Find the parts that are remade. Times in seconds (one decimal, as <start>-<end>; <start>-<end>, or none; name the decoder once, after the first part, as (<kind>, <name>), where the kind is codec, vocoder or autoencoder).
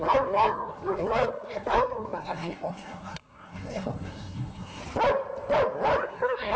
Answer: 0.0-4.8 (codec, SNAC); 6.0-6.6